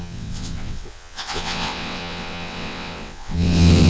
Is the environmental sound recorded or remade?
remade